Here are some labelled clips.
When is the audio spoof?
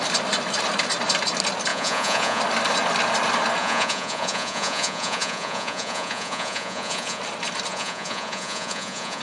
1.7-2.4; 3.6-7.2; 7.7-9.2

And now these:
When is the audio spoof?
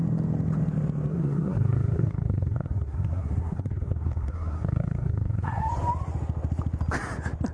1.1-5.6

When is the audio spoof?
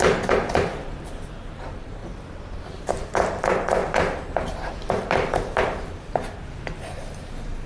0.0-2.0; 2.6-7.7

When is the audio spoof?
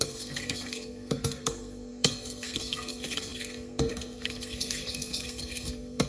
0.0-6.1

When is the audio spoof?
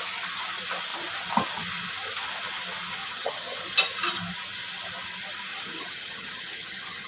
3.0-3.6; 5.5-7.1